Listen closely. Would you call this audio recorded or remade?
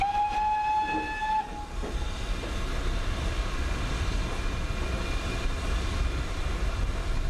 recorded